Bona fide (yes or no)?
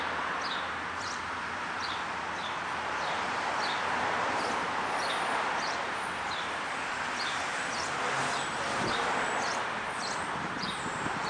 no